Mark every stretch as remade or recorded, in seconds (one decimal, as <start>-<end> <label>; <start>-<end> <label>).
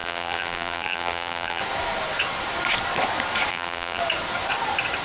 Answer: 0.0-1.6 remade; 1.6-3.5 recorded; 3.5-4.0 remade; 4.0-5.0 recorded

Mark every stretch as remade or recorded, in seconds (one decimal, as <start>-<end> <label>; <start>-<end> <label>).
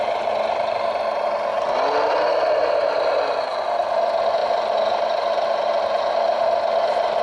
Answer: 0.0-7.2 recorded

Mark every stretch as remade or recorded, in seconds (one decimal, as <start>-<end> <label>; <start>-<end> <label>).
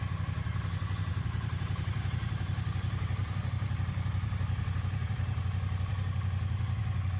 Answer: 0.0-1.1 recorded; 1.1-5.4 remade; 5.4-7.2 recorded